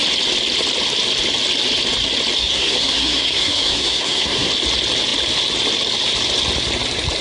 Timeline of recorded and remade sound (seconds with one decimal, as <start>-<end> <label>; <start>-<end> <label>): 0.0-2.4 recorded; 2.4-4.5 remade; 4.5-7.2 recorded